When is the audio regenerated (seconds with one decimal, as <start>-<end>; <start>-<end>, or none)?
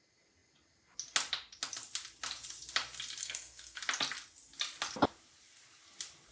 3.2-3.8